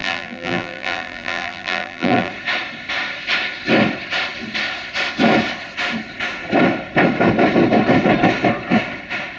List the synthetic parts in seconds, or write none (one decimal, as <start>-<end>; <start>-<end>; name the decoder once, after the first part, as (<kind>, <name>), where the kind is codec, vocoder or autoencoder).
0.0-2.3 (vocoder, BigVGAN v2)